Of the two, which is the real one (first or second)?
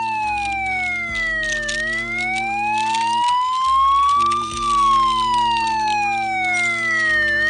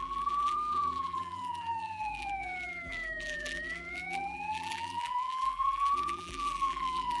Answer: first